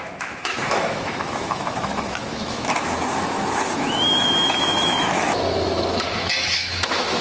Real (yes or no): no